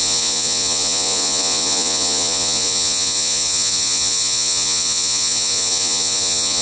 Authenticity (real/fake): fake